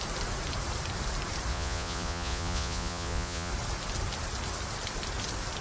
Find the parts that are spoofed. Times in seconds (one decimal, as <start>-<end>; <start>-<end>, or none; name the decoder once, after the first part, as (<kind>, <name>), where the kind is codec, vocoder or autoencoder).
1.5-3.5 (vocoder, Vocos)